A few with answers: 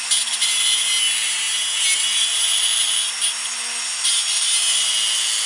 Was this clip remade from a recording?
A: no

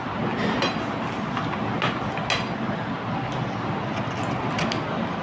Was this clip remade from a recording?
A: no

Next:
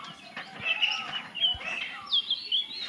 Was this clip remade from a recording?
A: no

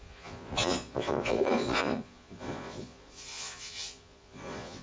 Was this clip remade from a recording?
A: yes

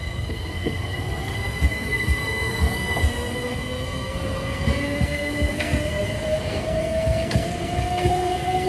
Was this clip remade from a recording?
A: yes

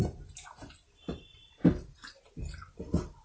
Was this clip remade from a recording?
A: no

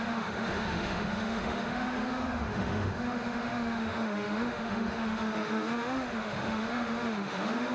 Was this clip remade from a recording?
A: yes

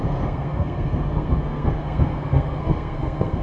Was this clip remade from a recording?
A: yes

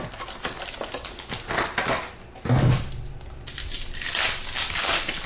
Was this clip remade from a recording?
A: no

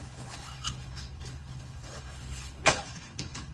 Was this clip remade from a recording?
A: yes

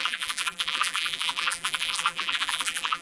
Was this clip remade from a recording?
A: yes